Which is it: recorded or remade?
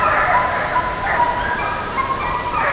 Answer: recorded